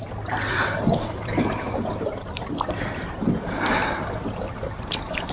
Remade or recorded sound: remade